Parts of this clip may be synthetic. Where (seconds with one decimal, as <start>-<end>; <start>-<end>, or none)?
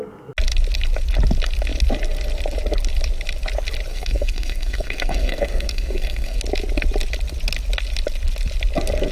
3.9-6.4